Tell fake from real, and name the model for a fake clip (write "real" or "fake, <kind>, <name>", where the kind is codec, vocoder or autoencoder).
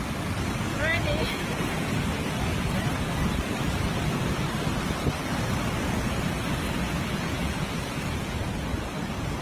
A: real